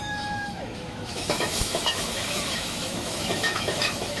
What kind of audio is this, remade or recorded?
remade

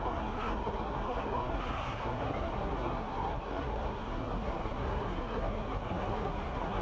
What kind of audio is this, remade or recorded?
remade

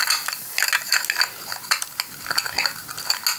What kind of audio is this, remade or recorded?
recorded